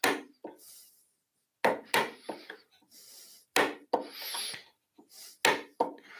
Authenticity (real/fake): real